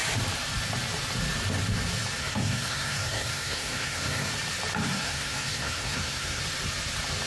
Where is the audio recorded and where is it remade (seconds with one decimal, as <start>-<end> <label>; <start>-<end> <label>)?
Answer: 0.0-2.2 recorded; 2.2-4.3 remade; 4.3-4.8 recorded; 4.8-6.4 remade; 6.4-7.3 recorded

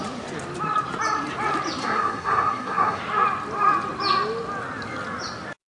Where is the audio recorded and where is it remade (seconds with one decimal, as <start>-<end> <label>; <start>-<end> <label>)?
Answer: 0.0-1.8 recorded; 1.8-3.0 remade; 3.0-5.8 recorded

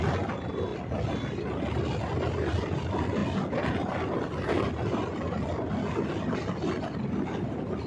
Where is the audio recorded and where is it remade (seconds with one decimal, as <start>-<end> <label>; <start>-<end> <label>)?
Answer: 0.0-7.9 recorded